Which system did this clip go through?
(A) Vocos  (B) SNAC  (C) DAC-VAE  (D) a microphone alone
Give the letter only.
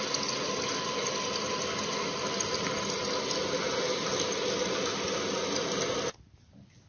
D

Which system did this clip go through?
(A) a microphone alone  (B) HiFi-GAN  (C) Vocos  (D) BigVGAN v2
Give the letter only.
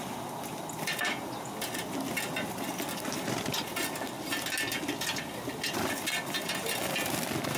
A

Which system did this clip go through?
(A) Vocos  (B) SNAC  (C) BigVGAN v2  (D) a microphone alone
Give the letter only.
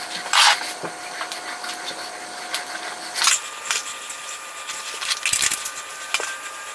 D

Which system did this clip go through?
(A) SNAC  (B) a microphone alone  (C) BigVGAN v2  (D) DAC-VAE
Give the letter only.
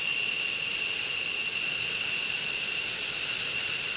B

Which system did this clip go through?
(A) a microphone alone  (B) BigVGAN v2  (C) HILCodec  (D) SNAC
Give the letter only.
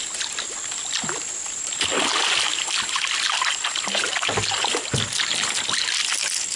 A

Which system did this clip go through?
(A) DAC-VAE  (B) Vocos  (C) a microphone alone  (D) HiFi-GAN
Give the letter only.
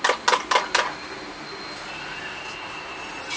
C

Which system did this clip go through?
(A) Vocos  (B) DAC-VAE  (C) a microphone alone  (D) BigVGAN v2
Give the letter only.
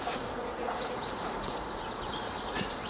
A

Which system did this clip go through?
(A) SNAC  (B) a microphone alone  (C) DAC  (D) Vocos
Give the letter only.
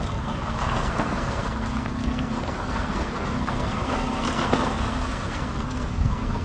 A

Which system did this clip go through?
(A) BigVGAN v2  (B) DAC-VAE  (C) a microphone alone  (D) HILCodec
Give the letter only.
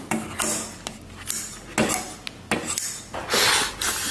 C